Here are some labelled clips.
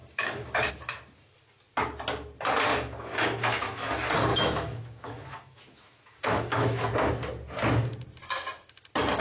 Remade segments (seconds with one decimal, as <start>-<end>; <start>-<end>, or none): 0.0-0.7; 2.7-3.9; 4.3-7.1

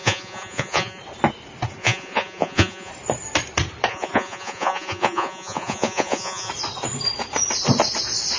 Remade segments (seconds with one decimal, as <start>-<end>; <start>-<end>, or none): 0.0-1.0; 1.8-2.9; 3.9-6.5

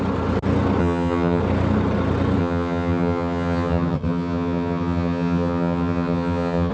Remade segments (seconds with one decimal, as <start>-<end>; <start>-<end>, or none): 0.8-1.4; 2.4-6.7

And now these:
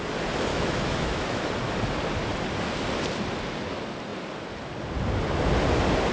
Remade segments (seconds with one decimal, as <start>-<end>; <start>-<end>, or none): 0.5-1.5

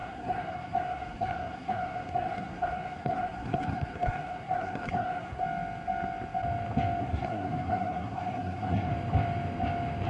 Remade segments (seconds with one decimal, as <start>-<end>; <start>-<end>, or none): 0.0-5.4; 7.0-8.9

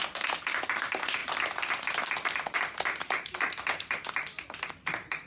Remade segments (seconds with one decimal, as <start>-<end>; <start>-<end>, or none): none

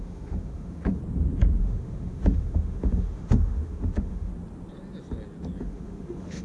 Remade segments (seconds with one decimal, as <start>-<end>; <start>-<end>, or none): 0.0-1.0; 1.6-4.3; 5.6-6.4